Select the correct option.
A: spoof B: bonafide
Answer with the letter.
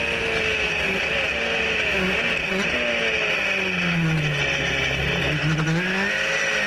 B